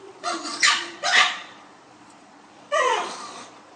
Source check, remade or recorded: remade